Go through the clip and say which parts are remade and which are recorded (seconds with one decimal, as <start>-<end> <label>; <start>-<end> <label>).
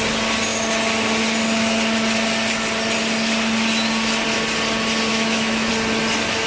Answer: 0.0-5.1 recorded; 5.1-5.7 remade; 5.7-6.5 recorded